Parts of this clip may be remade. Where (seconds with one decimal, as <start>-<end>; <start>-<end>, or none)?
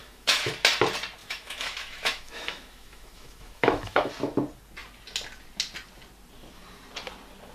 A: 0.0-0.5; 1.2-4.1